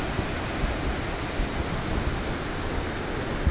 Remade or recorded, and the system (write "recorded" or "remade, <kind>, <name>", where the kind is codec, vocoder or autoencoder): recorded